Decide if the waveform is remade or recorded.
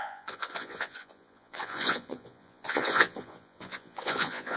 remade